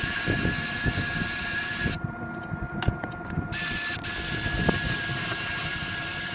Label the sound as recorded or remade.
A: remade